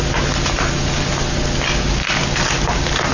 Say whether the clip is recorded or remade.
recorded